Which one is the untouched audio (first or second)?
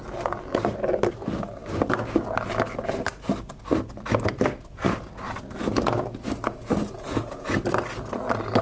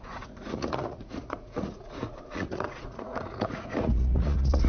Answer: first